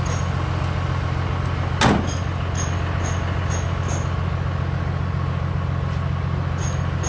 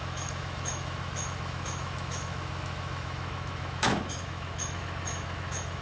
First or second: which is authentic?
first